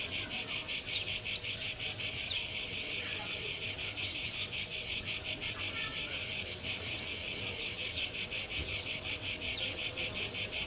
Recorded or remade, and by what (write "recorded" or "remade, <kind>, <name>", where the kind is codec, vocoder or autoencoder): remade, vocoder, WaveNeXt